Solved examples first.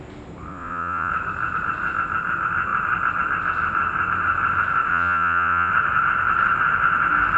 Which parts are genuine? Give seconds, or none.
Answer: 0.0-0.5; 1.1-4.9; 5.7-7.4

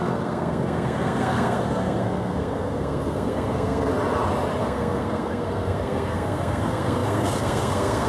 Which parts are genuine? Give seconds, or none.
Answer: 3.9-4.6